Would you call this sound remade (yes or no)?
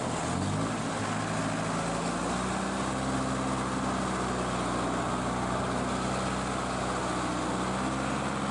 no